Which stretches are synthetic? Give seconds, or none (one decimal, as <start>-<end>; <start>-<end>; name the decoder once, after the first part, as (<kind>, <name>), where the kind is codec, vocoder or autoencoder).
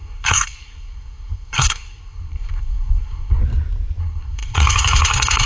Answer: 0.0-3.4 (codec, SNAC); 4.0-5.5